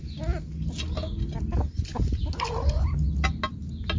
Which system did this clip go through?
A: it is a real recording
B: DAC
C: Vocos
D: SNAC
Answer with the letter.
A